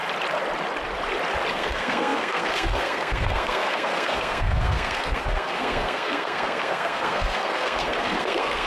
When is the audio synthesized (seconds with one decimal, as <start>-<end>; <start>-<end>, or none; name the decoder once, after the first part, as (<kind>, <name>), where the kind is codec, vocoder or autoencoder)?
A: 1.5-8.7 (codec, SNAC)